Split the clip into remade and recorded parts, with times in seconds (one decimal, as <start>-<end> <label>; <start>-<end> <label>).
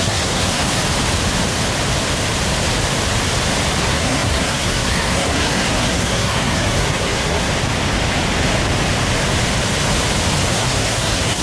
0.0-0.8 remade; 0.8-3.8 recorded; 3.8-7.5 remade; 7.5-10.5 recorded; 10.5-11.4 remade